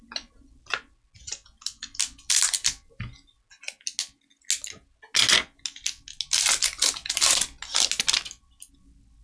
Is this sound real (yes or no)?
yes